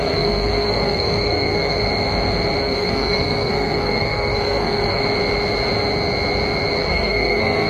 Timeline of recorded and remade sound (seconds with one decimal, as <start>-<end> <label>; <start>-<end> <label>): 0.0-1.8 remade; 1.8-2.6 recorded; 2.6-5.0 remade; 5.0-6.8 recorded; 6.8-7.7 remade